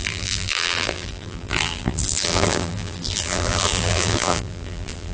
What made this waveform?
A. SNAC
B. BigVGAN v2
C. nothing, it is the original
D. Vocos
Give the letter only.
B